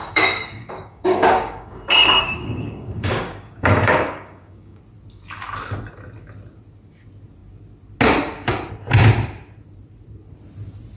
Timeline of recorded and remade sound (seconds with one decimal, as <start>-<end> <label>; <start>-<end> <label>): 0.0-4.8 remade; 4.8-11.0 recorded

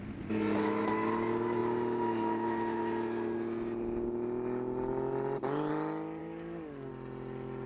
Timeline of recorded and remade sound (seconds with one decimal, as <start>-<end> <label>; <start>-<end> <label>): 0.0-6.2 recorded; 6.2-6.9 remade; 6.9-7.7 recorded

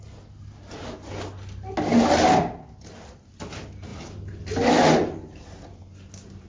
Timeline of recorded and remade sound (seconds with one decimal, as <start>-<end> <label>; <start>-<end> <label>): 0.0-6.5 recorded

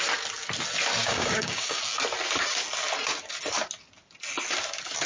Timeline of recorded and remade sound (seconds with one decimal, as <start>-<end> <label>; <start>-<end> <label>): 0.0-1.0 recorded; 1.0-1.8 remade; 1.8-5.1 recorded